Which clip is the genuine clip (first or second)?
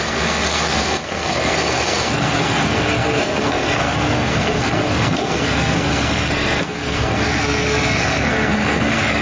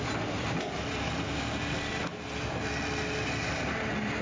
second